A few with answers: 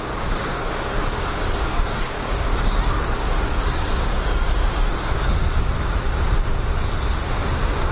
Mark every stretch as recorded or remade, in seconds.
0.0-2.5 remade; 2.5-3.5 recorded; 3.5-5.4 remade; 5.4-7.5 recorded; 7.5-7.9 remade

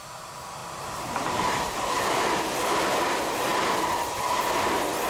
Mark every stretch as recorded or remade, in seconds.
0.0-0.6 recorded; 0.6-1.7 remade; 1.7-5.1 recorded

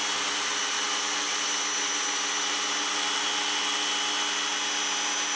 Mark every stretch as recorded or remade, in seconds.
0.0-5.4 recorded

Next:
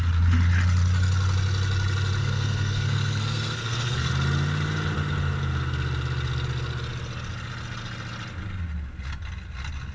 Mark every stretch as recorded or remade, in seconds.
0.0-2.2 recorded; 2.2-4.1 remade; 4.1-9.9 recorded